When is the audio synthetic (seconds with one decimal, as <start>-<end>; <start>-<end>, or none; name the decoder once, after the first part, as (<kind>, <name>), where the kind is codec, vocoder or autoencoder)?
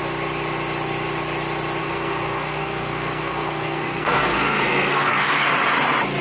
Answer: 1.8-5.5 (codec, SNAC)